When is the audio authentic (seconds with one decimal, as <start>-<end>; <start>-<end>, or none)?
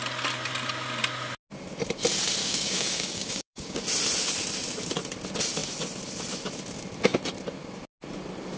0.0-2.4; 3.8-8.6